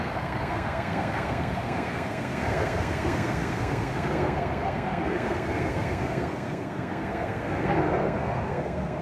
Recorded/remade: remade